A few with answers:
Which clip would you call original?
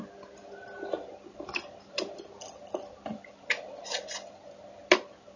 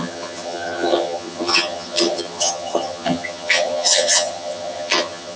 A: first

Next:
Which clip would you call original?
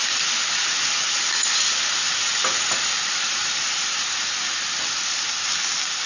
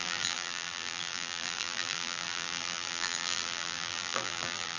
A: first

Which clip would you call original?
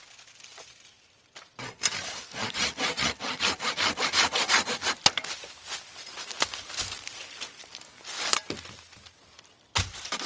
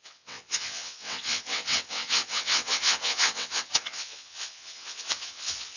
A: first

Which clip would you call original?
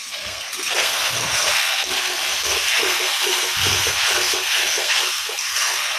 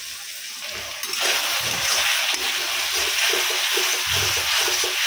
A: second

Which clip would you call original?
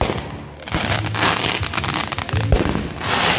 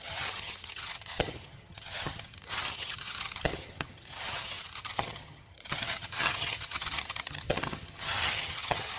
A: first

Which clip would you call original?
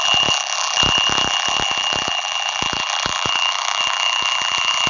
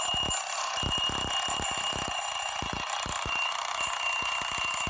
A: second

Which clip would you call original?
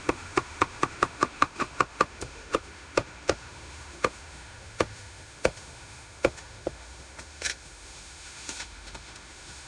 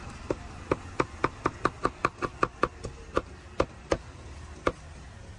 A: second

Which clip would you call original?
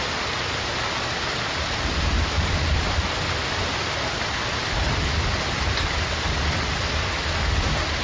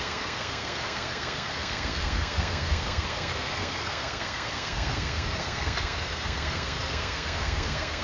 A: first